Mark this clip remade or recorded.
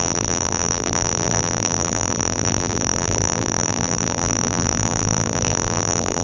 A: remade